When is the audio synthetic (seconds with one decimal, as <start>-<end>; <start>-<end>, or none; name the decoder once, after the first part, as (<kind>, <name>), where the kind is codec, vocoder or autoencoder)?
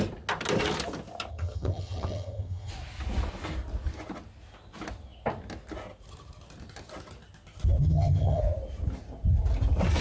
1.3-2.7 (vocoder, HiFi-GAN); 7.8-8.4